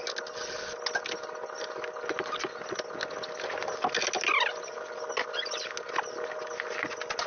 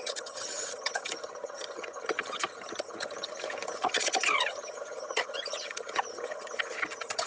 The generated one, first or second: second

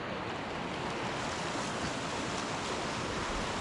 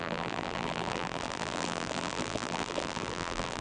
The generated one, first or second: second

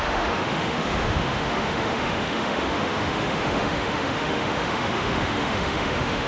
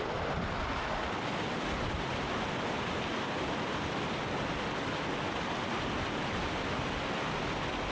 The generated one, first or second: first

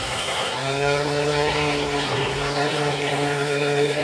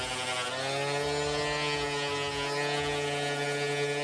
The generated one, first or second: first